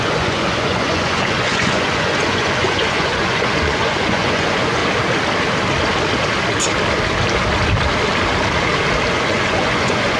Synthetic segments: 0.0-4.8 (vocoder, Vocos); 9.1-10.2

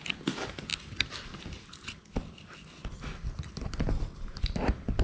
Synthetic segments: none

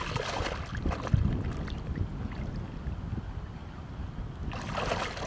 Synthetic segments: none

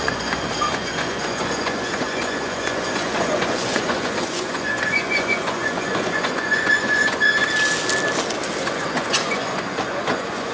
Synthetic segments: 0.0-7.4 (vocoder, Vocos); 8.6-10.5

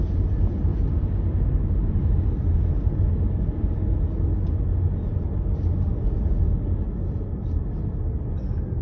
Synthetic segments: none